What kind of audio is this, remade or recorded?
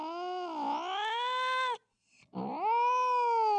recorded